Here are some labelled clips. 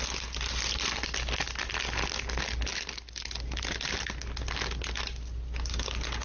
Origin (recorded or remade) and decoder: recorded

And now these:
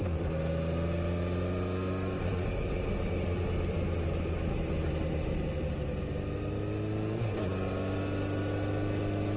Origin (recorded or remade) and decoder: recorded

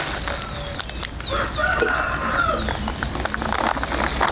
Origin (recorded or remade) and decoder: recorded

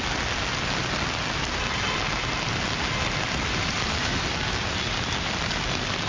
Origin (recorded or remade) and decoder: recorded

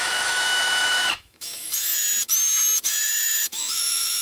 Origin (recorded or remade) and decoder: remade, autoencoder, DAC-VAE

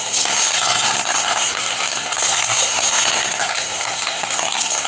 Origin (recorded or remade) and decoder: remade, codec, SNAC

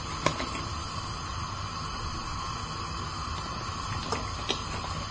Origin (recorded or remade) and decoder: recorded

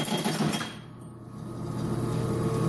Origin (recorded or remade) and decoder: remade, vocoder, BigVGAN v2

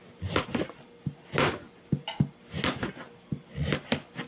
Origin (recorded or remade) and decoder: recorded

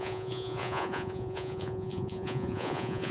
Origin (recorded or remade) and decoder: remade, vocoder, Vocos